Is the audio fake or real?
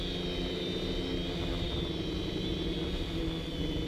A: real